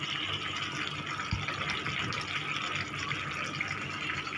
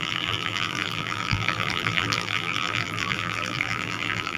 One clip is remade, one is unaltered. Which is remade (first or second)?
second